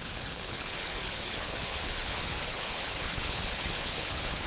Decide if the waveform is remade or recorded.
remade